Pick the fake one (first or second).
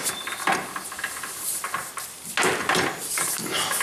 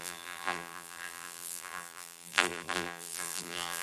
second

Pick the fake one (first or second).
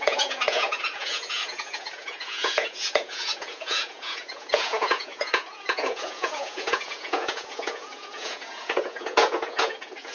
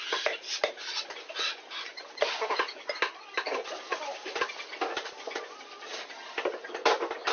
first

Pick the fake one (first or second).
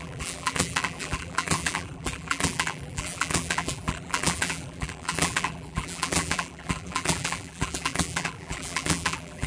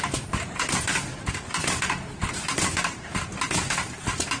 first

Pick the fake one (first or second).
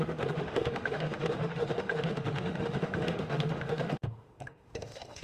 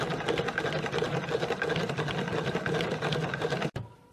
first